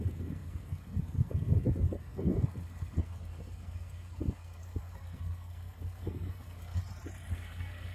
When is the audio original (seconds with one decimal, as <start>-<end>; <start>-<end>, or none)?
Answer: 6.8-7.3